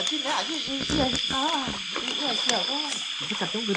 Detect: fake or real real